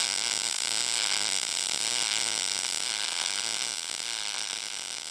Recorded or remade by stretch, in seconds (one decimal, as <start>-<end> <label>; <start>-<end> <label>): 0.0-5.1 recorded